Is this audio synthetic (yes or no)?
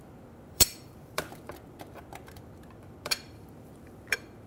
yes